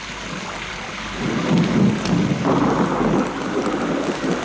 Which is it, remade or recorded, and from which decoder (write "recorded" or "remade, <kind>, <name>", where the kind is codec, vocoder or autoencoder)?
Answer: recorded